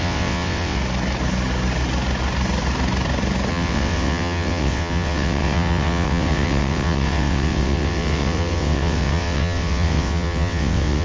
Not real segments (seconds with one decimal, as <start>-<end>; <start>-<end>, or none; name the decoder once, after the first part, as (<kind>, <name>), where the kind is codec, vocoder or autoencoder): 0.0-0.8 (vocoder, WaveNeXt); 3.5-11.0